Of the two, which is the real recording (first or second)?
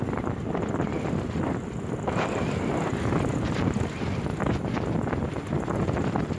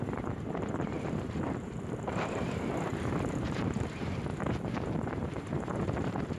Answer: first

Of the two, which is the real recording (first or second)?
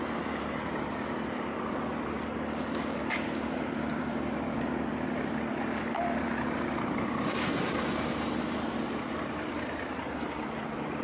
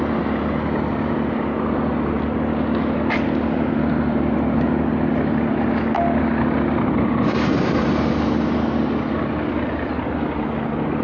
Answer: second